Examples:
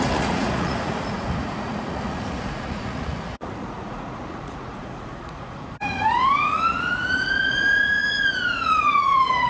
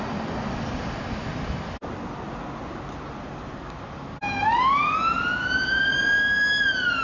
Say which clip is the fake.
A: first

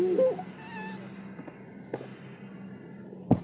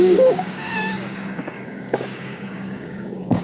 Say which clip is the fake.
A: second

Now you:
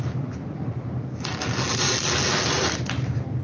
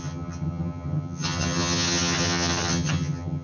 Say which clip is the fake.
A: second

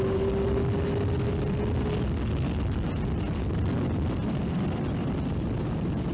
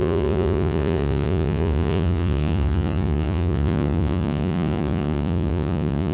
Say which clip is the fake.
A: second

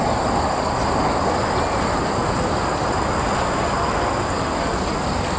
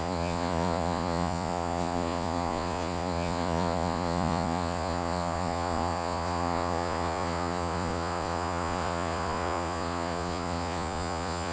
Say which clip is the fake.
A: second